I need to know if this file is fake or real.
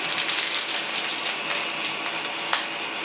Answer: real